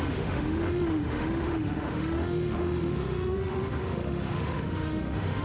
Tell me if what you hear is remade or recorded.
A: remade